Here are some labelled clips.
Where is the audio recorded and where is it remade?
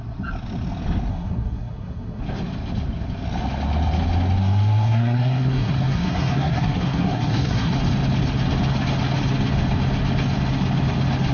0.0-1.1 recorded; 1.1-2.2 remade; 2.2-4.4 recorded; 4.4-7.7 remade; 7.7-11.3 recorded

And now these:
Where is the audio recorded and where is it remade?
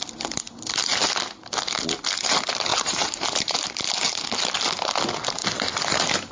0.0-2.7 recorded; 2.7-4.2 remade; 4.2-6.3 recorded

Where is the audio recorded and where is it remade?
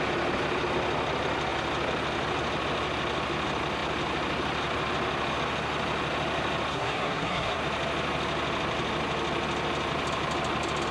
0.0-6.7 recorded; 6.7-7.6 remade; 7.6-10.9 recorded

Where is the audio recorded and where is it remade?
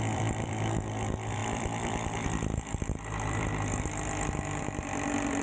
0.0-5.4 remade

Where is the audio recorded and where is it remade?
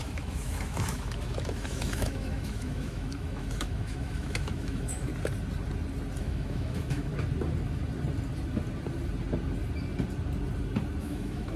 0.0-5.1 remade; 5.1-6.2 recorded; 6.2-7.1 remade; 7.1-11.0 recorded; 11.0-11.6 remade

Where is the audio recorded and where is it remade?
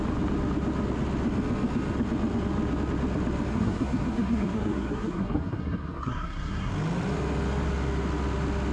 0.0-3.5 recorded; 3.5-6.7 remade; 6.7-8.7 recorded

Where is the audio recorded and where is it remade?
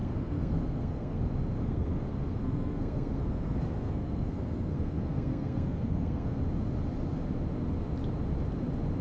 0.0-1.2 remade; 1.2-1.6 recorded; 1.6-6.4 remade; 6.4-9.0 recorded